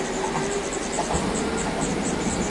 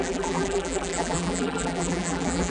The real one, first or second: first